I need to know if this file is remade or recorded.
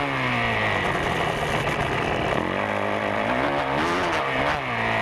recorded